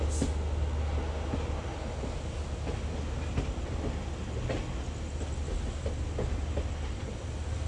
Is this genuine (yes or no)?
yes